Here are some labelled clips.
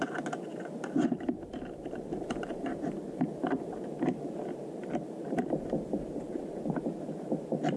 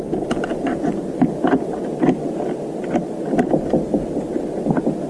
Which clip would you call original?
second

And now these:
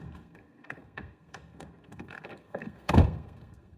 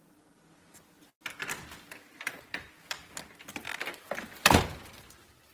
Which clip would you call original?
second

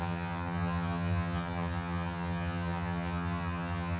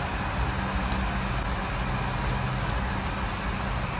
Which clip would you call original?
second